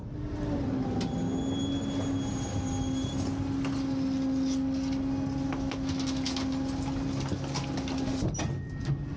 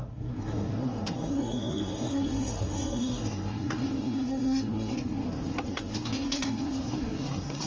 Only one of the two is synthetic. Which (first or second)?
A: second